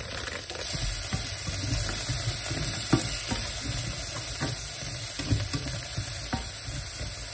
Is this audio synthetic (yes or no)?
no